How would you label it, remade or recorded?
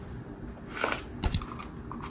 recorded